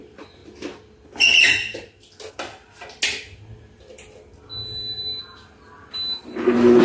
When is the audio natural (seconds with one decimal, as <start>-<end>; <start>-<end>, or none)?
0.0-6.8